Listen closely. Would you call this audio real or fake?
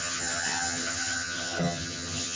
fake